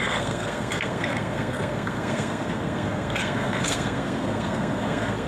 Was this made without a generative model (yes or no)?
no